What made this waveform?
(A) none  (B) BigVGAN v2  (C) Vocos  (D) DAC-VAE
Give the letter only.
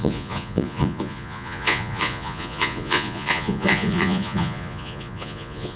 C